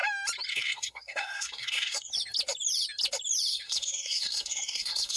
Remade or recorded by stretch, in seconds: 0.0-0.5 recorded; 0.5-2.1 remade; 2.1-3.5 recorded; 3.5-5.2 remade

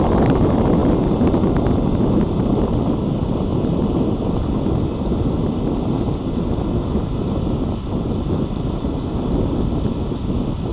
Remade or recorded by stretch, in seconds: 0.0-10.7 recorded

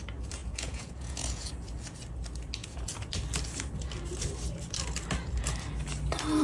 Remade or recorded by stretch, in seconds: 0.0-0.4 recorded; 0.4-1.5 remade; 1.5-2.6 recorded; 2.6-3.1 remade; 3.1-6.4 recorded

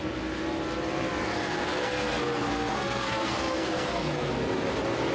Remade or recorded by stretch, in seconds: 0.0-1.2 recorded; 1.2-4.3 remade; 4.3-5.1 recorded